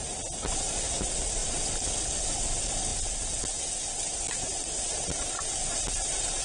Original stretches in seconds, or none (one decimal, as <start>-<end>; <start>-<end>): 0.0-6.4